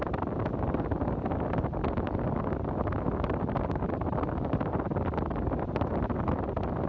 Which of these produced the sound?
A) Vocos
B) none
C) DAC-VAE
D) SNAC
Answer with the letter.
B